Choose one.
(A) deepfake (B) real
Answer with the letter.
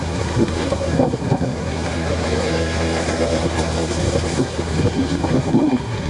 A